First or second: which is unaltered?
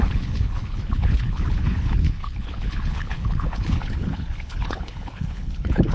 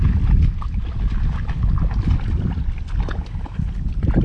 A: second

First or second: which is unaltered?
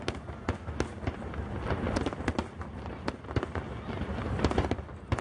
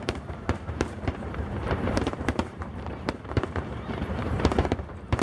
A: first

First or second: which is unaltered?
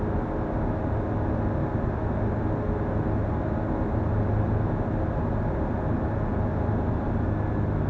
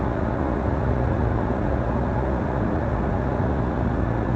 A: first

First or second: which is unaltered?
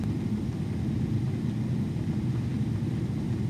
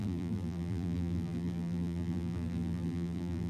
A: first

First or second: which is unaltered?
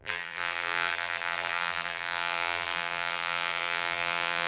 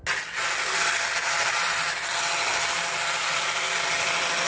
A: second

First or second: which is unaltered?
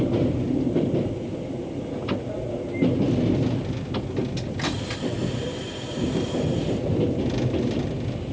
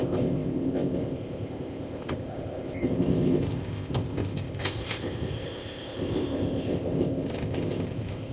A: first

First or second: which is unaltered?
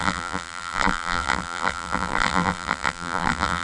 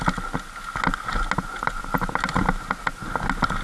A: second